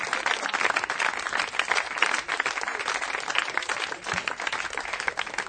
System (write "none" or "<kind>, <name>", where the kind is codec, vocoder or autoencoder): none